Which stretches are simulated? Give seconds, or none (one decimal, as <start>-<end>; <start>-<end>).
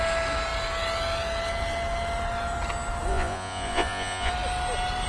3.1-4.3